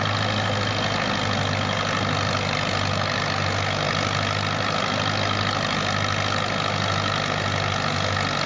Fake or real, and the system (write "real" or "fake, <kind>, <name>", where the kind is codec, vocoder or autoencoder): real